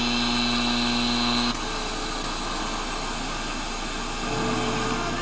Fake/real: real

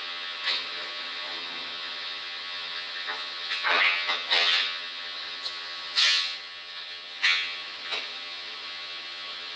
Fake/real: fake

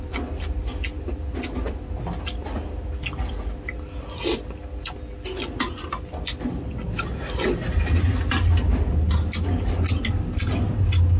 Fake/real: real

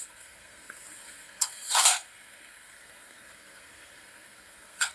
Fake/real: fake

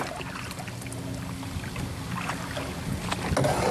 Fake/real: real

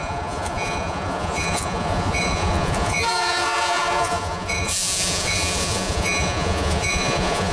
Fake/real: fake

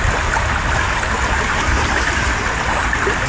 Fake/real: real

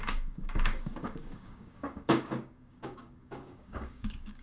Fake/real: fake